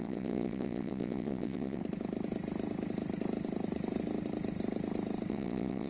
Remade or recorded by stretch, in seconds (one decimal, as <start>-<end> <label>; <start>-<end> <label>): 0.0-1.8 remade; 1.8-5.3 recorded; 5.3-5.9 remade